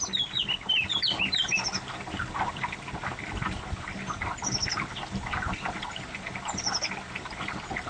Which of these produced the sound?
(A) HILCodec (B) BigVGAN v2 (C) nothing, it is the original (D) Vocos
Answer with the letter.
C